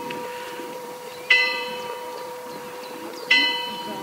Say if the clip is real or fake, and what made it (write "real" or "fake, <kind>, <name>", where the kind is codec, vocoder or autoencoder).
fake, vocoder, BigVGAN v2